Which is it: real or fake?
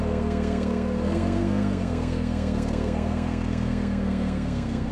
fake